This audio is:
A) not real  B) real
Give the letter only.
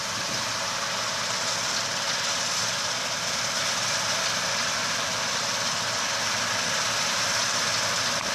B